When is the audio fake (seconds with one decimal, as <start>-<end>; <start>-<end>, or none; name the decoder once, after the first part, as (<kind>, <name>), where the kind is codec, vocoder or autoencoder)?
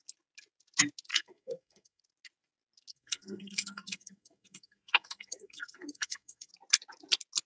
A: 1.1-2.0 (codec, SNAC); 2.9-6.5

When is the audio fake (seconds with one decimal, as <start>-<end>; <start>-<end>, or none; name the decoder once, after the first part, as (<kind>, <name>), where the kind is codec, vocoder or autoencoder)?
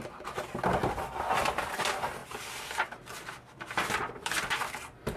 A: none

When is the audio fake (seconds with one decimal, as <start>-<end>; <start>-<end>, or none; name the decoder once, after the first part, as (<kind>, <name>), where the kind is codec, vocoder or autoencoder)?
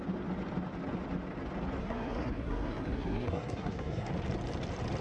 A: 1.8-4.1 (codec, SNAC)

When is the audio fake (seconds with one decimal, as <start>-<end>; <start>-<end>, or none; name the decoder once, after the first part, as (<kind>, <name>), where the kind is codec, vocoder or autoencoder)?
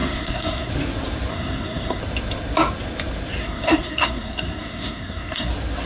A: 0.0-0.7 (codec, SNAC); 1.3-2.0; 3.4-5.5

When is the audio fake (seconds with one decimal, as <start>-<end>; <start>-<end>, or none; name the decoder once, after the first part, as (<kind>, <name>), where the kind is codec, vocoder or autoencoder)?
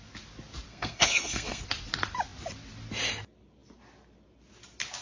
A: 0.7-1.6 (codec, SNAC)